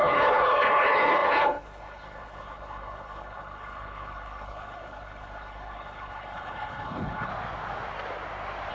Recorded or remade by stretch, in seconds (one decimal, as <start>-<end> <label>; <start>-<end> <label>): 0.0-7.3 remade; 7.3-8.7 recorded